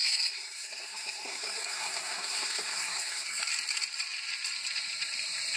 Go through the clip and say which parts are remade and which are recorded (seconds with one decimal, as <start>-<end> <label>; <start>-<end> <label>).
0.0-3.4 remade; 3.4-5.6 recorded